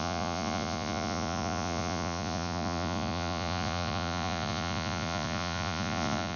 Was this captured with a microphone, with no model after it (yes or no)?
no